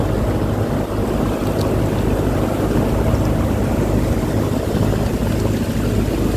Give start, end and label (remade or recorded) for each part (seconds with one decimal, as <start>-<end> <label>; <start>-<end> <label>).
0.0-6.4 recorded